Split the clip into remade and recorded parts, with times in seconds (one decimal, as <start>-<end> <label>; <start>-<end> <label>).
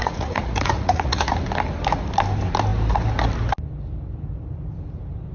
0.0-1.3 remade; 1.3-5.3 recorded